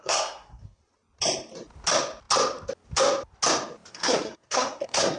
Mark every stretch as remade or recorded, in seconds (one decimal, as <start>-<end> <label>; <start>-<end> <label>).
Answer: 0.0-0.8 remade; 0.8-3.9 recorded; 3.9-5.2 remade